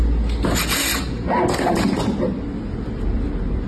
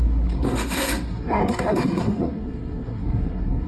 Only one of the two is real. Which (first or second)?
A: first